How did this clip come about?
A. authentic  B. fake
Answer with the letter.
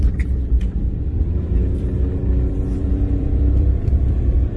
B